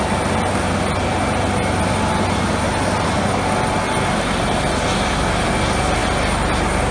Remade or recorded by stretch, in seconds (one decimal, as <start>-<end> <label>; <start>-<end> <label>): 0.0-6.9 recorded